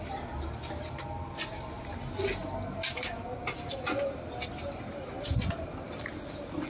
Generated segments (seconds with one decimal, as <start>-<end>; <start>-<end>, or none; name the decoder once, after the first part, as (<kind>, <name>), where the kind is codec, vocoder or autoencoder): none